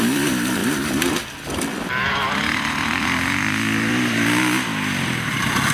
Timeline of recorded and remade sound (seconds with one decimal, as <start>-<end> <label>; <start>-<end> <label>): 0.0-0.6 remade; 0.6-2.3 recorded; 2.3-4.7 remade; 4.7-5.3 recorded; 5.3-5.7 remade